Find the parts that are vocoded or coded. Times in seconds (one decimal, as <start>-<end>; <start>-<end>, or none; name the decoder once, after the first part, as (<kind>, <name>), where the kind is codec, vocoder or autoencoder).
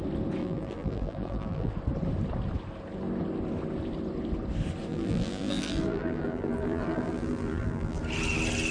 0.4-1.7 (vocoder, BigVGAN v2); 4.9-8.0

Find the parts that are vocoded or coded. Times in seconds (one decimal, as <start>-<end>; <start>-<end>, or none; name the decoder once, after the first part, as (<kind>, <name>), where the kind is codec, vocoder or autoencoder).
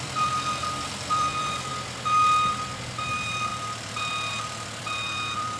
0.0-1.7 (vocoder, BigVGAN v2); 2.5-5.6